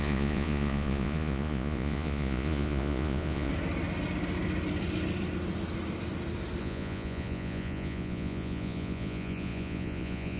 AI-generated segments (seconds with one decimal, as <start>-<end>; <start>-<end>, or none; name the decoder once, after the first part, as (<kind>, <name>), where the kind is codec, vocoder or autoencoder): 0.0-3.5 (vocoder, Vocos); 6.6-10.4